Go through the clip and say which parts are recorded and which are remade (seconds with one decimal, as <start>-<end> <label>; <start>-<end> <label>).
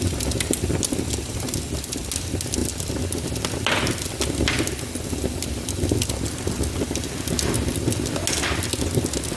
0.0-9.4 recorded